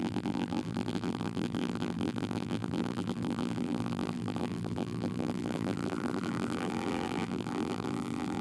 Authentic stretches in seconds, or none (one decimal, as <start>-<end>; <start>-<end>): none